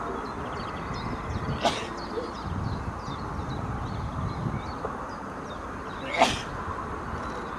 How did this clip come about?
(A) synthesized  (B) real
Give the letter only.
B